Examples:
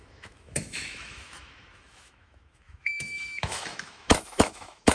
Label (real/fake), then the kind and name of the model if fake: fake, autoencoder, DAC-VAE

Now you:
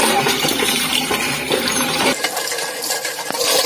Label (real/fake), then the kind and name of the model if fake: fake, vocoder, BigVGAN v2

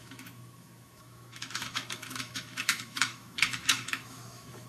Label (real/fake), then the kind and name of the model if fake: fake, autoencoder, DAC-VAE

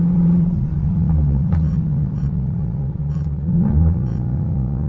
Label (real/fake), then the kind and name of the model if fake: fake, vocoder, Vocos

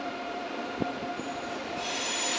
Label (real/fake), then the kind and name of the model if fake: fake, vocoder, BigVGAN v2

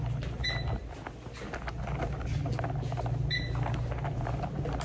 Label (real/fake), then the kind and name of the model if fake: real